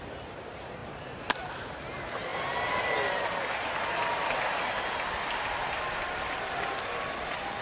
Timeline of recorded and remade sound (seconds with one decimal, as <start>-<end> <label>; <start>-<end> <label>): 0.0-7.6 recorded